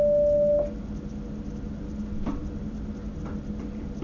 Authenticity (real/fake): real